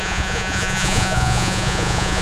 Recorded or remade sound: remade